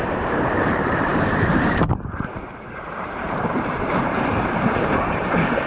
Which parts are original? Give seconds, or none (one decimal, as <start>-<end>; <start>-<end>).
none